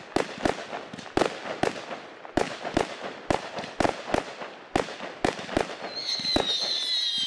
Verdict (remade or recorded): recorded